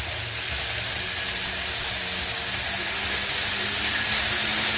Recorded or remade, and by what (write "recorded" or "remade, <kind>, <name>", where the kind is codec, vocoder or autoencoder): recorded